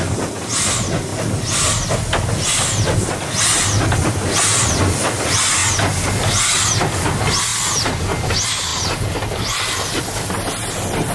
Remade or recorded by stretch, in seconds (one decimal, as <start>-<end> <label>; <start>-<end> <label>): 0.0-11.1 recorded